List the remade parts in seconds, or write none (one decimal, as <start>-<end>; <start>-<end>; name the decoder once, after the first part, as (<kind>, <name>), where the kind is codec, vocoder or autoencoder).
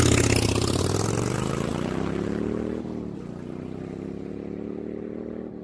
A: none